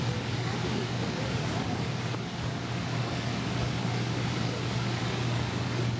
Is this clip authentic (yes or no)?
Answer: no